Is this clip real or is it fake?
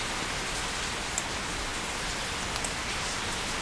real